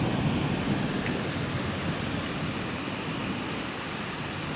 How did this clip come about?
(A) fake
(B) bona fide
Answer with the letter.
B